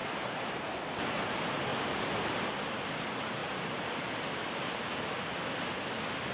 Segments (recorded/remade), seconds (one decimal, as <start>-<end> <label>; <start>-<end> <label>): 0.0-0.8 remade; 0.8-1.7 recorded; 1.7-2.5 remade; 2.5-3.4 recorded; 3.4-5.0 remade; 5.0-6.3 recorded